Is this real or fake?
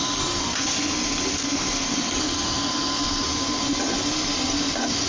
real